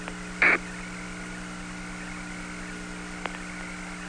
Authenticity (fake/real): real